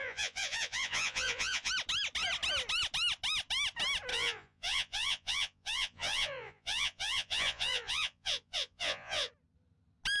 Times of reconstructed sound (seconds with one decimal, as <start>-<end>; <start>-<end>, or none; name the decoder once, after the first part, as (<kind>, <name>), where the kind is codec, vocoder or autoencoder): 0.0-1.7 (vocoder, Vocos); 4.1-9.3